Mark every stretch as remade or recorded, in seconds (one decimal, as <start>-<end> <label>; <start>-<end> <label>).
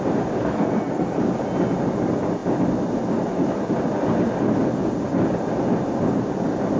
0.0-0.4 recorded; 0.4-1.2 remade; 1.2-6.8 recorded